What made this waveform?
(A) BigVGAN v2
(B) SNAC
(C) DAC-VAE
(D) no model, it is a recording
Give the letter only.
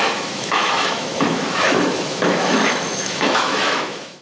C